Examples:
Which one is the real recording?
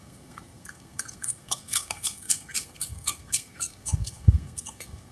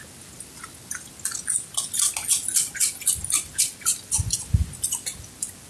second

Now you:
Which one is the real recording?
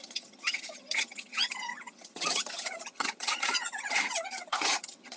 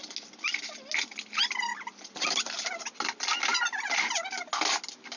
second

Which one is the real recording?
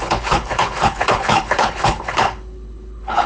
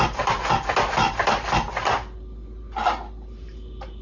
second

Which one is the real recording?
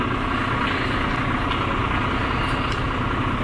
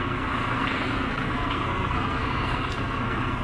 first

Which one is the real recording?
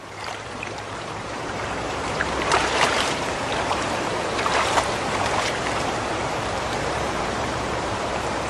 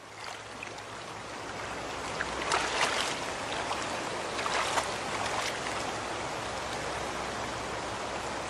second